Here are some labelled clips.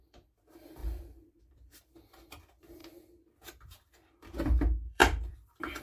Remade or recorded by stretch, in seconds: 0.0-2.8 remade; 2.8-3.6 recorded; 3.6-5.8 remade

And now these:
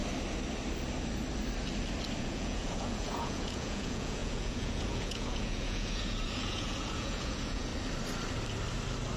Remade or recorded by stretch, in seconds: 0.0-2.2 recorded; 2.2-7.7 remade; 7.7-9.2 recorded

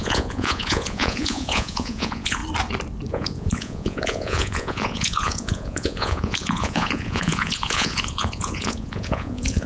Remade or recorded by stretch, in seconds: 0.0-2.4 remade; 2.4-3.1 recorded; 3.1-9.7 remade

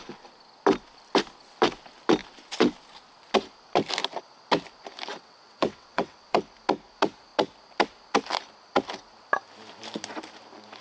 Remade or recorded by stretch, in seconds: 0.0-5.1 recorded; 5.1-6.4 remade; 6.4-10.8 recorded